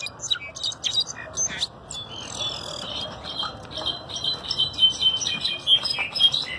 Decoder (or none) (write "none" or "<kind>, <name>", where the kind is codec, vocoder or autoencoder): none